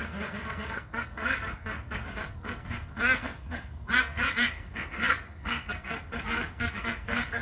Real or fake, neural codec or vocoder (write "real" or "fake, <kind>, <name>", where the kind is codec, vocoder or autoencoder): fake, codec, SNAC